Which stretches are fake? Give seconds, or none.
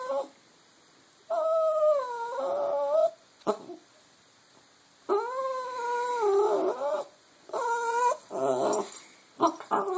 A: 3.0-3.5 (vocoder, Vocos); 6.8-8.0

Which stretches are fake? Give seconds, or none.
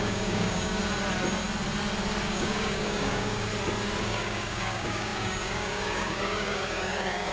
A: 0.0-0.8 (codec, DAC); 2.2-3.5; 4.0-7.3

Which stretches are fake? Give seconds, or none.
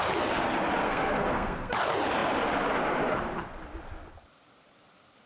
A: 0.8-1.7 (codec, SNAC)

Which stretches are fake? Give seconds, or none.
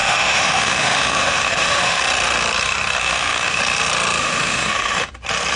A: 0.0-2.0 (autoencoder, DAC-VAE); 3.0-3.6; 4.2-5.1